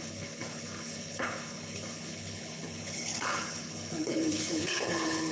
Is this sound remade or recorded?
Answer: remade